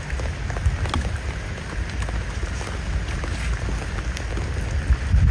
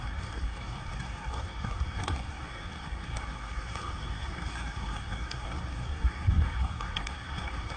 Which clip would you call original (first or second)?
first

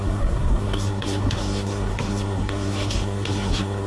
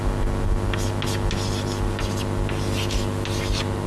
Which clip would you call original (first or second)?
second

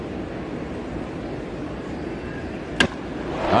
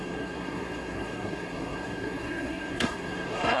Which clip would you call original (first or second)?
first